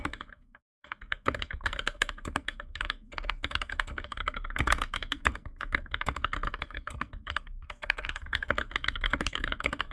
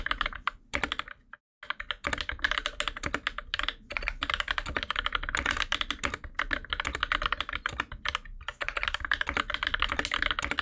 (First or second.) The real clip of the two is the second